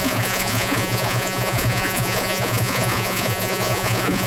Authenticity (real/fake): fake